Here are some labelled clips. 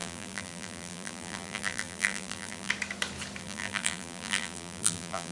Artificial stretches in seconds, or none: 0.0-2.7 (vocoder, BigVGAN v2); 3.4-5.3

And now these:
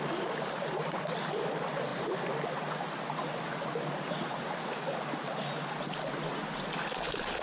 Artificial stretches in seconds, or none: none

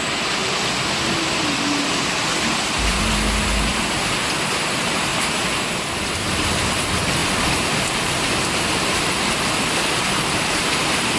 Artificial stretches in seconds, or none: 0.4-3.0 (vocoder, BigVGAN v2); 3.7-4.3; 5.1-6.5; 7.2-9.1

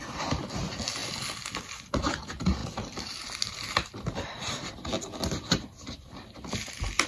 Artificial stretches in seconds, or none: 2.6-7.1 (vocoder, BigVGAN v2)

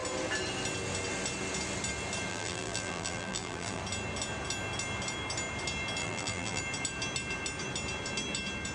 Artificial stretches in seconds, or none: 2.3-3.8 (vocoder, BigVGAN v2); 6.0-6.6

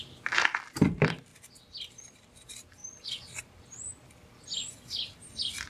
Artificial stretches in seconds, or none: 0.0-1.3 (vocoder, BigVGAN v2); 2.1-2.8; 3.4-5.7